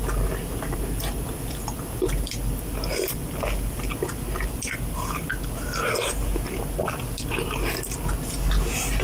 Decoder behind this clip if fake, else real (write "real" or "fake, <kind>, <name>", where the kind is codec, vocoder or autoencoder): real